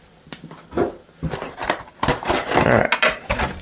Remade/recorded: recorded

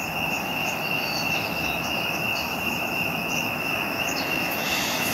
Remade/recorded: remade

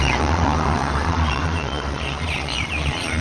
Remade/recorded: remade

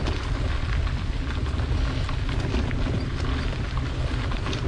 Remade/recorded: recorded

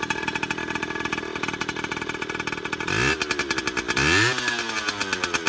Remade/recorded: recorded